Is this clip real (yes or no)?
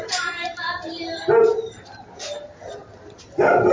yes